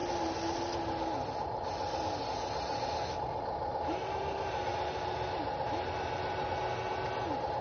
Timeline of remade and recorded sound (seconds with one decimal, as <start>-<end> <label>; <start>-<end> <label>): 0.0-7.6 recorded